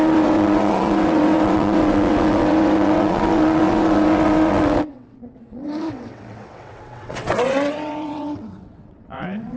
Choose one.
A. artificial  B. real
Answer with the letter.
A